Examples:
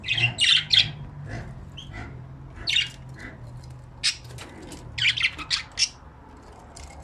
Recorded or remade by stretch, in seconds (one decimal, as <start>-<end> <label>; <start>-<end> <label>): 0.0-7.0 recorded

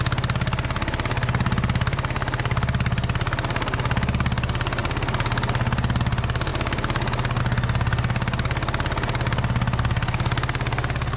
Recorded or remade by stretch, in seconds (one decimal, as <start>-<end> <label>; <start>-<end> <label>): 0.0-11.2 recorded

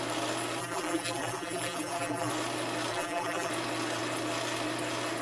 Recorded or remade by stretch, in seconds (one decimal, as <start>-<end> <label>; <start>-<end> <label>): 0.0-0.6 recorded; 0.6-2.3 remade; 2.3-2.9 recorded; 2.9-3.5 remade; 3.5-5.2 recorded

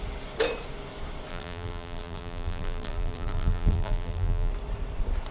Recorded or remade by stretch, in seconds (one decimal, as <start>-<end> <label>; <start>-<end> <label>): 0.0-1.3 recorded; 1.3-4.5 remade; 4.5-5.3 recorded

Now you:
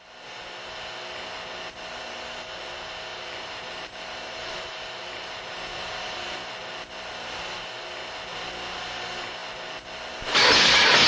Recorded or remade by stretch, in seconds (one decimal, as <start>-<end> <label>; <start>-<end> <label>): 0.0-3.1 recorded; 3.1-6.3 remade; 6.3-11.1 recorded

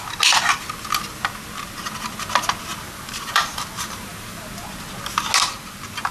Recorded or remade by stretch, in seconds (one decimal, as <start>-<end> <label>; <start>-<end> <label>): 0.0-2.7 recorded; 2.7-4.4 remade; 4.4-6.1 recorded

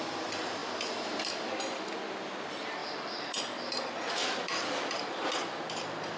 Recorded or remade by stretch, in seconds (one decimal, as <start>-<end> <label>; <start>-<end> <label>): 0.0-0.6 recorded; 0.6-1.3 remade; 1.3-2.8 recorded; 2.8-6.2 remade

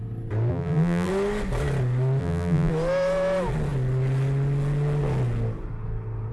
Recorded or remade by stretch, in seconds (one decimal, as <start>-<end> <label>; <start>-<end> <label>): 0.0-0.5 recorded; 0.5-1.1 remade; 1.1-2.2 recorded; 2.2-2.7 remade; 2.7-6.3 recorded